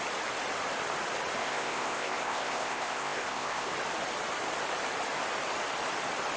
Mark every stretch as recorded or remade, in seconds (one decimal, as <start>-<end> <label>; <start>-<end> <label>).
0.0-1.4 recorded; 1.4-3.7 remade; 3.7-6.4 recorded